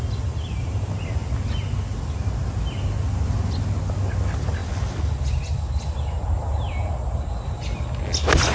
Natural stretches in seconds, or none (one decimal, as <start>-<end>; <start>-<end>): 0.0-8.5